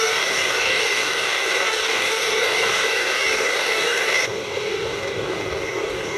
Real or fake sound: fake